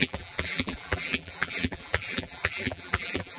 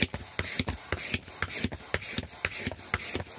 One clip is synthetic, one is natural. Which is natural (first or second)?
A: second